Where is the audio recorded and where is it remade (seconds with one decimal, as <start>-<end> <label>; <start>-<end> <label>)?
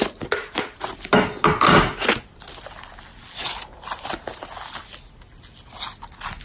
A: 0.0-6.4 recorded